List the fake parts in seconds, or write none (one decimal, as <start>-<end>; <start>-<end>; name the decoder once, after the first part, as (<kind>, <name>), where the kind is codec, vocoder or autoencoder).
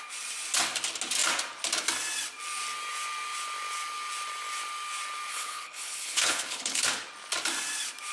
5.3-6.8 (codec, HILCodec)